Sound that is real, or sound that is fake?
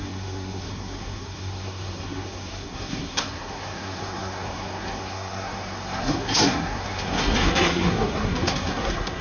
fake